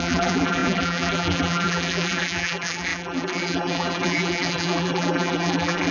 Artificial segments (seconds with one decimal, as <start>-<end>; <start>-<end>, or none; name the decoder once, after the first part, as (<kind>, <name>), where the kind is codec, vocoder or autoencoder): 0.0-5.9 (vocoder, BigVGAN v2)

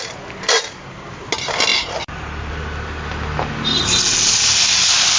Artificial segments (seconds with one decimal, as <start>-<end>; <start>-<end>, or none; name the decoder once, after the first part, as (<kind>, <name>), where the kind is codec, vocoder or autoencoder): none

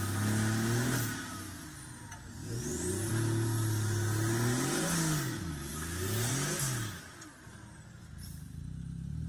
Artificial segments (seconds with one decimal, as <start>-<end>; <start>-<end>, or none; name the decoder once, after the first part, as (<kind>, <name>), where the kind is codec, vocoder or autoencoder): 2.4-3.1 (vocoder, BigVGAN v2)

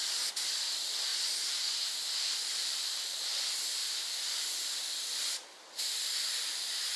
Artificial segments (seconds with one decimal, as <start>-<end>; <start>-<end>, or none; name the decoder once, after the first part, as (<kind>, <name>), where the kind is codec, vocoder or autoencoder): 0.5-1.1 (vocoder, BigVGAN v2); 2.5-3.8; 6.4-7.0

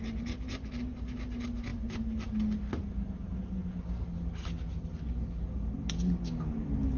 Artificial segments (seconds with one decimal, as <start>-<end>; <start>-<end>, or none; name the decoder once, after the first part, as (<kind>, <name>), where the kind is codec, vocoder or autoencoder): none

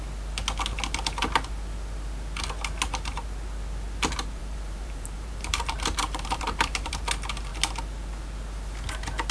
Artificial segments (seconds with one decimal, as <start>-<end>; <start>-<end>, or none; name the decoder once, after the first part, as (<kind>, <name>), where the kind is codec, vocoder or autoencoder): 4.4-6.9 (vocoder, BigVGAN v2)

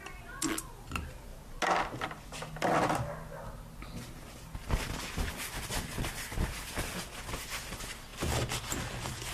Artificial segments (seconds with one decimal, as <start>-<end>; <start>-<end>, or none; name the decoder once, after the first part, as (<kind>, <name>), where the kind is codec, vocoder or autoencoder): none

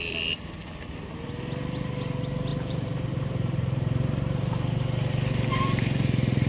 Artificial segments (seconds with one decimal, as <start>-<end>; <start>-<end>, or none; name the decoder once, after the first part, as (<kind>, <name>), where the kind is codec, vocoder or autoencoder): 2.5-6.5 (vocoder, BigVGAN v2)